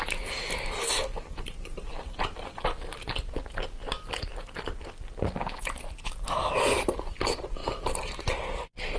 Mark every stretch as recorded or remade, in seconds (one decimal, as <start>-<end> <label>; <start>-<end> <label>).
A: 0.0-9.0 recorded